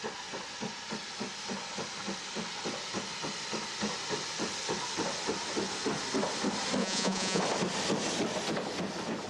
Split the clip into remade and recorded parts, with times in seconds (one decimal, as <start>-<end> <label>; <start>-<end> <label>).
0.0-6.8 recorded; 6.8-7.4 remade; 7.4-9.3 recorded